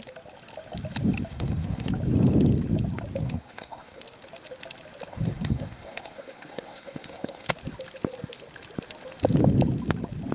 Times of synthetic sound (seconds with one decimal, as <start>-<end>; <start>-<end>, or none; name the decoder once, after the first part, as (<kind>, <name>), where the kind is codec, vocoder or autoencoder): 1.3-1.9 (codec, SNAC); 3.2-4.0; 5.1-7.5